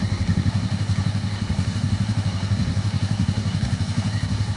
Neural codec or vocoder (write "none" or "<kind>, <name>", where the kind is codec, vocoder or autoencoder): codec, SNAC